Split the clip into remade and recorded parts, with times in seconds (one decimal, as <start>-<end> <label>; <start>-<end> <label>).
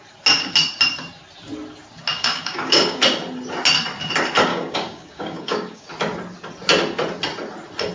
0.0-2.1 recorded; 2.1-3.0 remade; 3.0-4.5 recorded; 4.5-5.9 remade; 5.9-7.9 recorded